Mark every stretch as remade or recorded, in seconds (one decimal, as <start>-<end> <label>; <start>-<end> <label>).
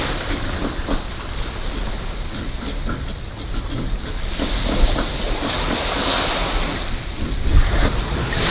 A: 0.0-8.5 recorded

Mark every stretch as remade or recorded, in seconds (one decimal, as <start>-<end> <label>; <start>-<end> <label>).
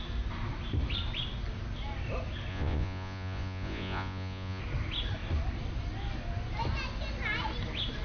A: 0.0-2.5 recorded; 2.5-4.6 remade; 4.6-8.0 recorded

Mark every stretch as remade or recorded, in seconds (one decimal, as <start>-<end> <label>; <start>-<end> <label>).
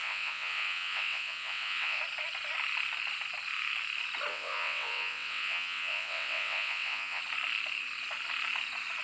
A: 0.0-2.0 remade; 2.0-4.3 recorded; 4.3-7.2 remade; 7.2-9.0 recorded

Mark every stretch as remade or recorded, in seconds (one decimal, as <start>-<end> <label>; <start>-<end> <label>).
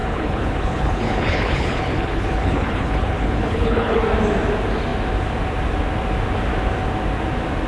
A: 0.0-4.0 remade; 4.0-7.7 recorded